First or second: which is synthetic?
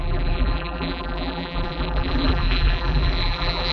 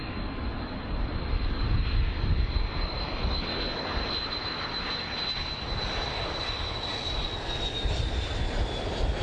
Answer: first